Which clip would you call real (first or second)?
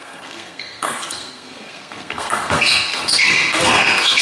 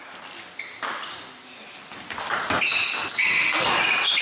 second